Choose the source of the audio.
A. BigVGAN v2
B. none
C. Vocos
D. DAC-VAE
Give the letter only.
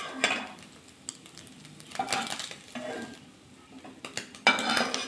B